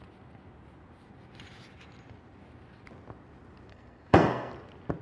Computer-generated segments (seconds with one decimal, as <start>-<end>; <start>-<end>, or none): 3.7-4.5